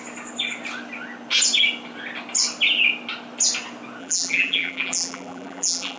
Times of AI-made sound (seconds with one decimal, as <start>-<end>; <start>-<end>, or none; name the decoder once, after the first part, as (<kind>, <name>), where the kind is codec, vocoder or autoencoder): 4.0-6.0 (vocoder, BigVGAN v2)